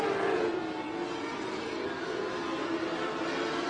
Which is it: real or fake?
real